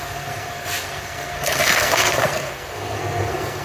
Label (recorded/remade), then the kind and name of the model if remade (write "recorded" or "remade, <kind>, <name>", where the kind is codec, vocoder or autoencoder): remade, codec, SNAC